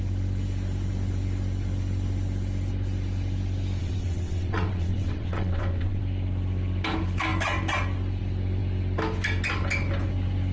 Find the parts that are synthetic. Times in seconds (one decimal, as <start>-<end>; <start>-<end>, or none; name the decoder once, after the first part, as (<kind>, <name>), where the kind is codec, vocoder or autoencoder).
3.8-6.0 (vocoder, WaveNeXt)